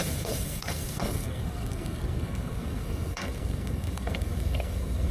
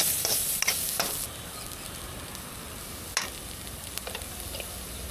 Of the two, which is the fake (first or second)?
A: first